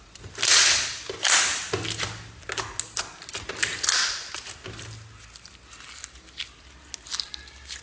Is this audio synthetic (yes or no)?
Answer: no